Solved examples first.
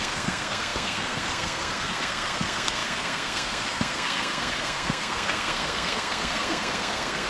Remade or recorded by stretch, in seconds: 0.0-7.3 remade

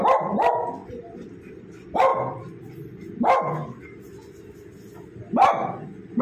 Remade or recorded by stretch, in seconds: 0.0-6.2 recorded

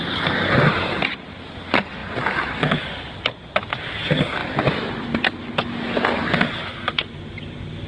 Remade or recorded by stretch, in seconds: 0.0-4.4 recorded; 4.4-5.2 remade; 5.2-7.9 recorded

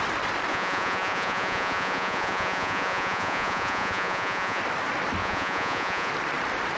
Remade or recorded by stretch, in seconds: 0.0-0.5 recorded; 0.5-4.6 remade; 4.6-5.2 recorded; 5.2-6.1 remade; 6.1-6.8 recorded

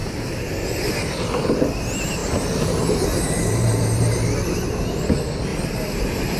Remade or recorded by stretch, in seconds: 0.0-0.5 remade; 0.5-2.2 recorded; 2.2-4.7 remade; 4.7-5.5 recorded; 5.5-6.4 remade

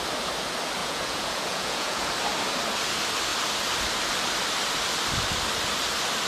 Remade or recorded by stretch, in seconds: 0.0-0.8 recorded; 0.8-2.1 remade; 2.1-6.3 recorded

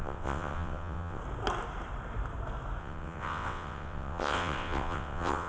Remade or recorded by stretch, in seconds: 0.0-1.2 remade; 1.2-2.8 recorded; 2.8-5.5 remade